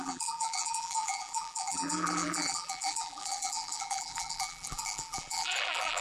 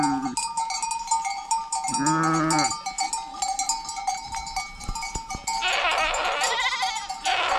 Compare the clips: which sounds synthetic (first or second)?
first